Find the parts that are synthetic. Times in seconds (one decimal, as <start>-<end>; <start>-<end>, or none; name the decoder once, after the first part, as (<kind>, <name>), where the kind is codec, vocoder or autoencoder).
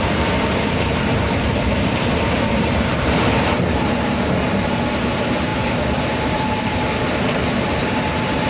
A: 0.0-8.5 (vocoder, BigVGAN v2)